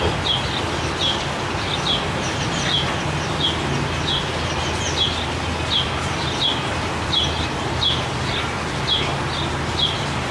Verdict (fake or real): real